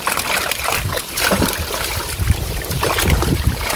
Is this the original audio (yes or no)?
no